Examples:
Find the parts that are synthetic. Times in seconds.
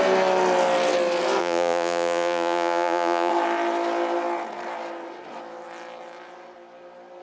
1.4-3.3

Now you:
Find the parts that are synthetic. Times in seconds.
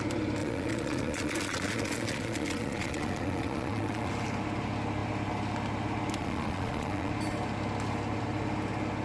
0.4-4.1; 6.2-7.1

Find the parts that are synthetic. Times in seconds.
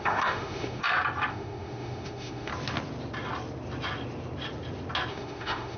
0.0-0.8; 1.3-2.5; 5.1-5.8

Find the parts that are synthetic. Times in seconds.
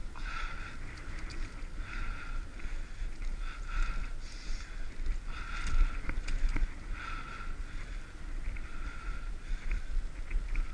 none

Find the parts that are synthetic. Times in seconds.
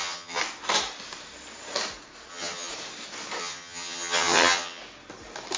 0.0-0.4; 2.3-2.7; 3.4-4.8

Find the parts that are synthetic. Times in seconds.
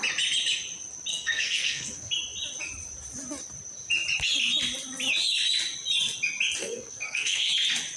1.1-2.1; 6.6-7.5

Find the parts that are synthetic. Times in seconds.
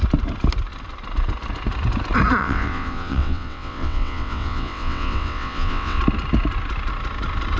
2.4-6.0